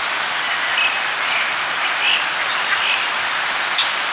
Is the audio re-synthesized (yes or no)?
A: no